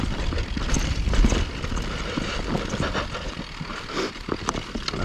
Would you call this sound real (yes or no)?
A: no